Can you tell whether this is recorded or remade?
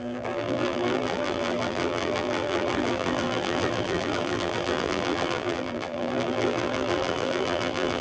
remade